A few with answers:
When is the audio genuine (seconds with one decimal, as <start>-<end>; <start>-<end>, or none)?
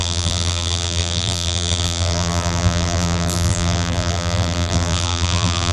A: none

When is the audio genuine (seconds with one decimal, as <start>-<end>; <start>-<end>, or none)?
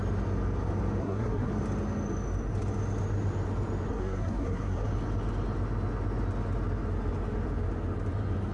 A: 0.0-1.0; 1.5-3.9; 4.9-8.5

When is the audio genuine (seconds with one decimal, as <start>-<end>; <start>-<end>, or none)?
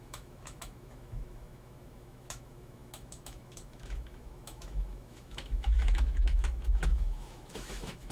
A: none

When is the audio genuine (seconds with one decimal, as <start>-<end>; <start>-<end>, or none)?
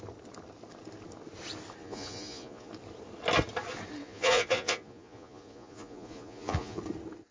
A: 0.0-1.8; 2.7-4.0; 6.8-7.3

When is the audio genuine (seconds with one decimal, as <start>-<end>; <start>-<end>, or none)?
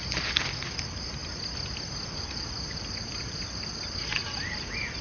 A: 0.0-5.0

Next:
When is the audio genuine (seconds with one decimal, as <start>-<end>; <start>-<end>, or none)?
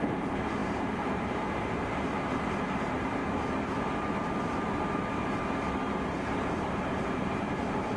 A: none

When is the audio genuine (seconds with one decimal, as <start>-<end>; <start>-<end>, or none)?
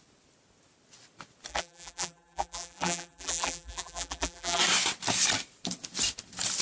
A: 0.0-1.5; 4.6-6.6